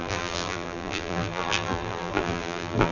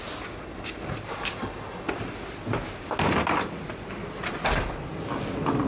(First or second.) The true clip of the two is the second